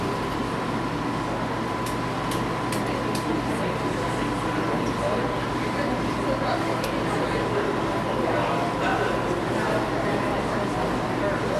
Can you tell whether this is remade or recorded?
recorded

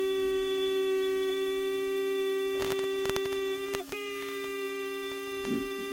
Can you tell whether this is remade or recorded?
remade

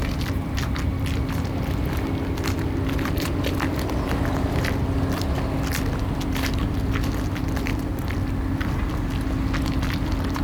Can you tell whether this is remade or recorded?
recorded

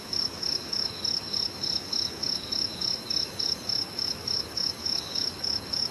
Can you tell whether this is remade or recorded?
remade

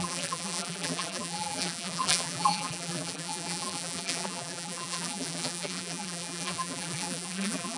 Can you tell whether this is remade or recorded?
remade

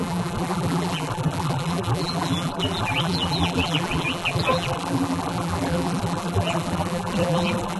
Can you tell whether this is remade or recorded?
remade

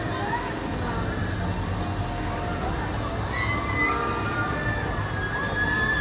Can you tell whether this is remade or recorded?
recorded